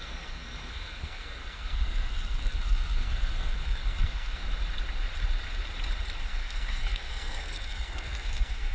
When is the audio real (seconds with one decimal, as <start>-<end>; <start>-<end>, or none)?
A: 4.4-6.2